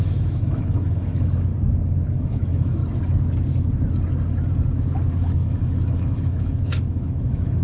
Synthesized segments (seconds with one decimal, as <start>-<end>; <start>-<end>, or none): 0.0-1.5; 2.1-2.8; 5.1-7.6